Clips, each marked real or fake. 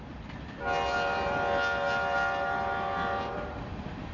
real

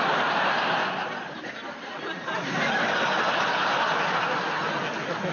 real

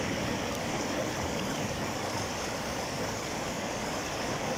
fake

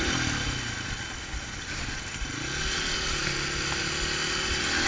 real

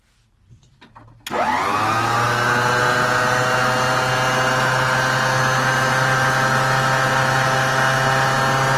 real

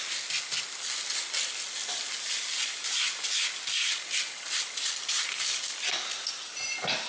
real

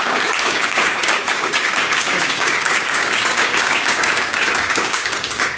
fake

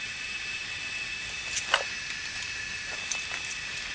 real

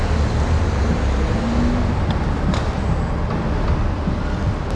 real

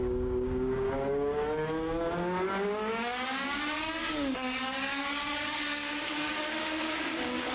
fake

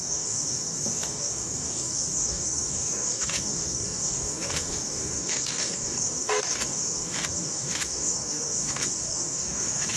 fake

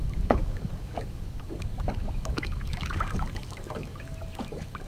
fake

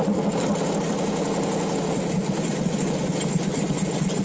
real